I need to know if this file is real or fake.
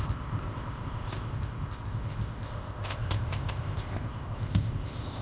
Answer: fake